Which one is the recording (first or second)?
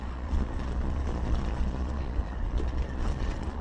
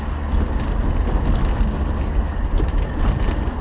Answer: second